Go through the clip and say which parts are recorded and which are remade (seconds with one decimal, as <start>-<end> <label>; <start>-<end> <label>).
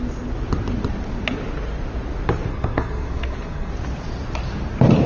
0.0-2.5 recorded; 2.5-3.7 remade; 3.7-5.1 recorded